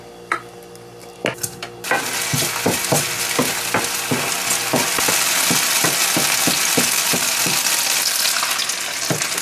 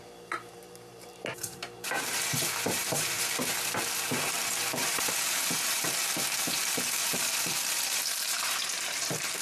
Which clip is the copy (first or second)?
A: second